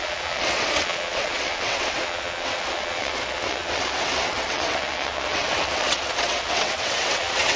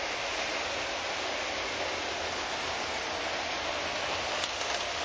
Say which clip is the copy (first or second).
first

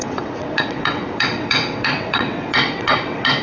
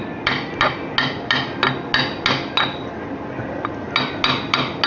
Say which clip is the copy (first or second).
first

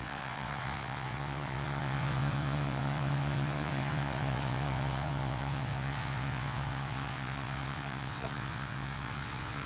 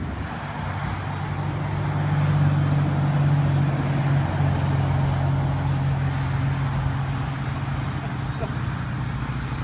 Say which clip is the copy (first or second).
first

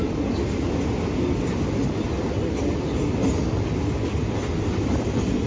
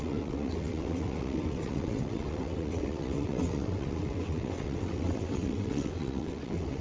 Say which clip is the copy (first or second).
second